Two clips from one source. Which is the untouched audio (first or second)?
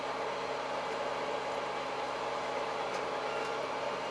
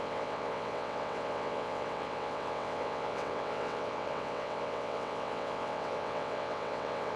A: first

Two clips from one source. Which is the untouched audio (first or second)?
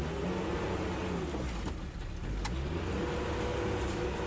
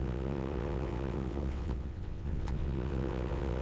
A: first